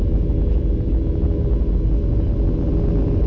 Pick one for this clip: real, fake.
real